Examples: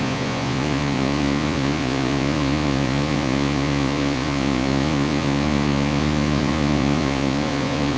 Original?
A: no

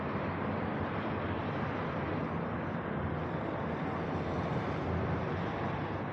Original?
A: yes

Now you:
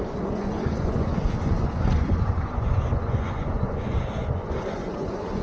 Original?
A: no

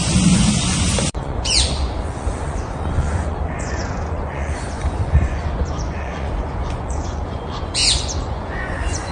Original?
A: no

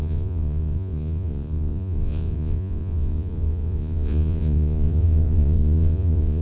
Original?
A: no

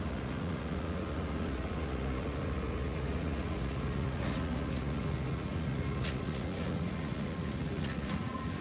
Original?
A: no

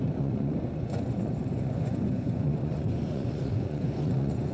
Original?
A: no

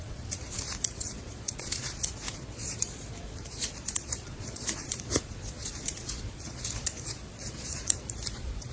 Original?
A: no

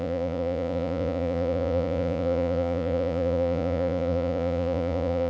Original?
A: no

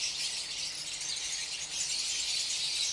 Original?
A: yes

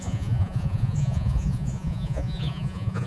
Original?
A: no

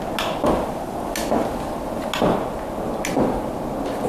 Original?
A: yes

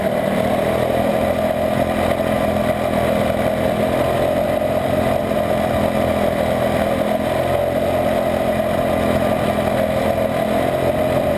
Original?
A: yes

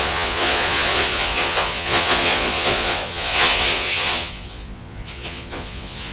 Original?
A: no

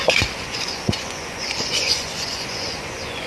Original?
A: no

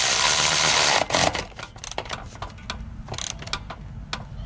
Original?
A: yes